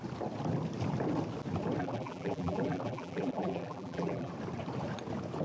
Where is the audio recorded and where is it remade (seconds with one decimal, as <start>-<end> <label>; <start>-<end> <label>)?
0.0-1.8 recorded; 1.8-4.3 remade; 4.3-5.4 recorded